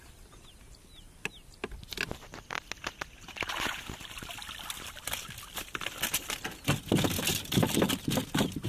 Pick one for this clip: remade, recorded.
recorded